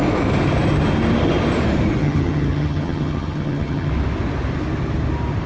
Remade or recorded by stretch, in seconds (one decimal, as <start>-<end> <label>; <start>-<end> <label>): 0.0-2.0 recorded; 2.0-3.9 remade; 3.9-5.5 recorded